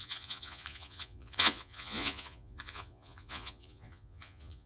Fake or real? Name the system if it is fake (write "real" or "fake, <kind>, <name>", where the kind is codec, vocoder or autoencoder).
fake, vocoder, Vocos